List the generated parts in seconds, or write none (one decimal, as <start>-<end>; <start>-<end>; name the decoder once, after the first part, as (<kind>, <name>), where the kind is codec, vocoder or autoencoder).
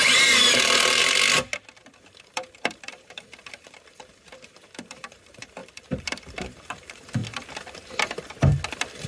0.0-1.0 (vocoder, BigVGAN v2); 2.3-7.2